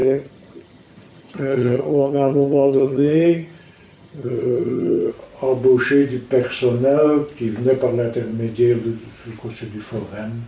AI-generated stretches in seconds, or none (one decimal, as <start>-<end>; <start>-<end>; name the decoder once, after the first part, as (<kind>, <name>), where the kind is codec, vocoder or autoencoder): 0.0-5.1 (vocoder, HiFi-GAN)